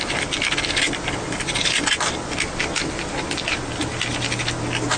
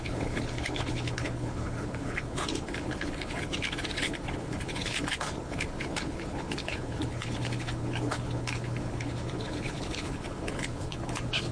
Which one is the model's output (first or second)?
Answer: second